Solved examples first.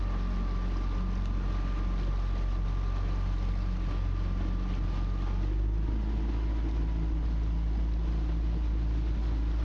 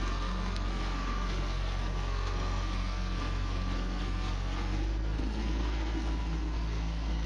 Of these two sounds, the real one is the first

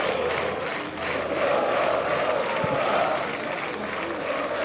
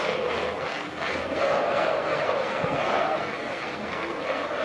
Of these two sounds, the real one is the first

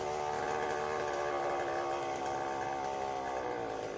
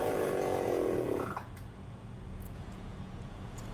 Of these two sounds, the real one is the first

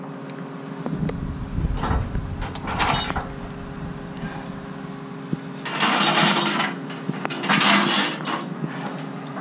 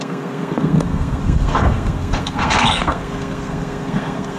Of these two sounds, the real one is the first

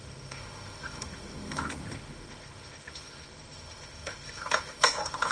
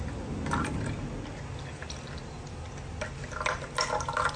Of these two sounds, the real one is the second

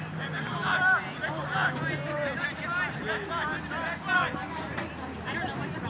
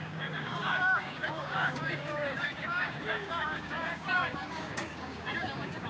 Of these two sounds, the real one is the first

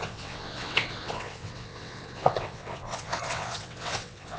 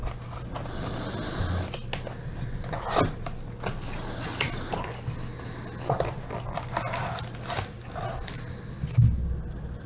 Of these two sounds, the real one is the second